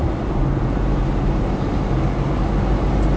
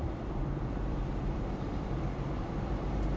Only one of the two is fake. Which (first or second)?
second